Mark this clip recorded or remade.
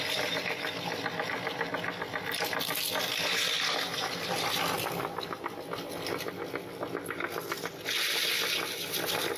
recorded